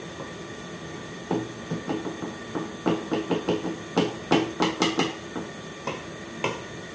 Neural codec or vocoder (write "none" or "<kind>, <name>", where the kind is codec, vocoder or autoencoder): none